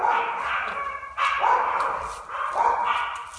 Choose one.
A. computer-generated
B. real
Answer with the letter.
B